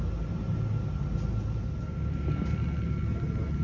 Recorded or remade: recorded